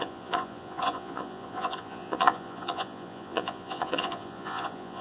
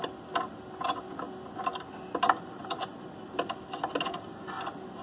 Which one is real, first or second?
second